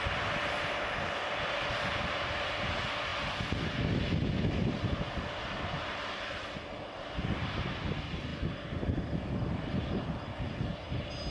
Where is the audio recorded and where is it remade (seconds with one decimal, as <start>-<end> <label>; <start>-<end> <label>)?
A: 0.0-11.3 recorded